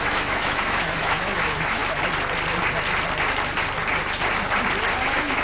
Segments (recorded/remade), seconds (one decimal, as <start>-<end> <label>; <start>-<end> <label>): 0.0-1.8 remade; 1.8-5.0 recorded; 5.0-5.4 remade